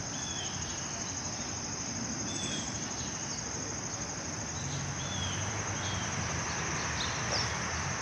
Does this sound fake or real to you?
fake